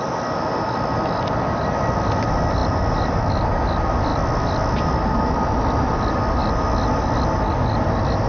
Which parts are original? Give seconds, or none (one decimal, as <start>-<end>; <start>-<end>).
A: 0.0-8.3